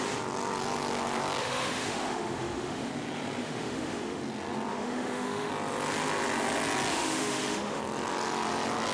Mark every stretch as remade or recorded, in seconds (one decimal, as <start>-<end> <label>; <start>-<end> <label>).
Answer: 0.0-1.4 recorded; 1.4-2.9 remade; 2.9-3.4 recorded; 3.4-4.2 remade; 4.2-4.7 recorded; 4.7-5.5 remade; 5.5-6.9 recorded; 6.9-7.8 remade; 7.8-8.9 recorded